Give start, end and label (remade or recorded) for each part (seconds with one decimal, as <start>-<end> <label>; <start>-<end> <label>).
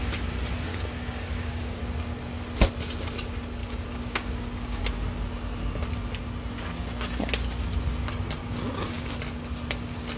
0.0-0.7 recorded; 0.7-1.8 remade; 1.8-3.6 recorded; 3.6-4.8 remade; 4.8-8.4 recorded; 8.4-9.2 remade; 9.2-10.2 recorded